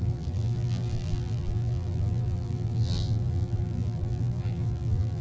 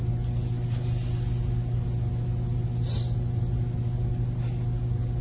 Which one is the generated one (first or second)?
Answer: first